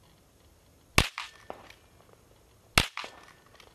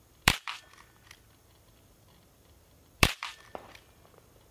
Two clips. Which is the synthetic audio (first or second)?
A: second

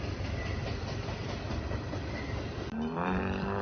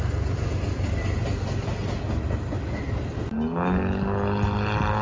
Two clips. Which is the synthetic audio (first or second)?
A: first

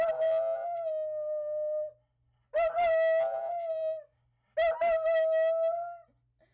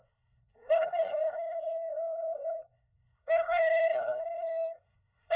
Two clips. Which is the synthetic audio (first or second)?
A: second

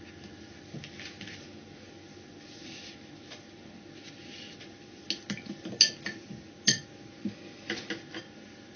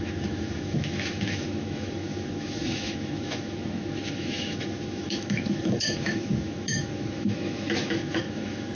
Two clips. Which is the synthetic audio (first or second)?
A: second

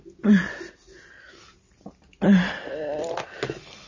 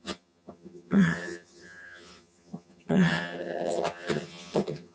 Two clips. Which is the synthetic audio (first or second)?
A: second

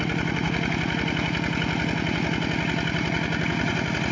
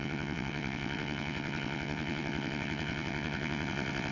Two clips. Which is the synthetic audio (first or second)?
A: second